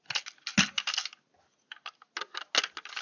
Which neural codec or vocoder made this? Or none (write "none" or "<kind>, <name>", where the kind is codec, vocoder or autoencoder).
none